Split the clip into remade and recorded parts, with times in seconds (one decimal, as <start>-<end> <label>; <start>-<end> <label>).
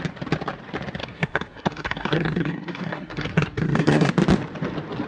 0.0-1.0 recorded; 1.0-4.1 remade; 4.1-5.1 recorded